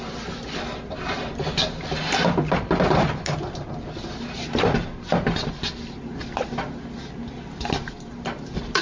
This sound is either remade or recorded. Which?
recorded